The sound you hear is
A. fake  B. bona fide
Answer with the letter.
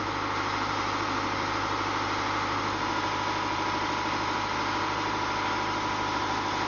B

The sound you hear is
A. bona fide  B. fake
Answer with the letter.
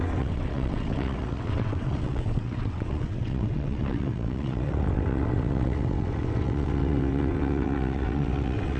B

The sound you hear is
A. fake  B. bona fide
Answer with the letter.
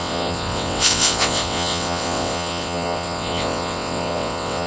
A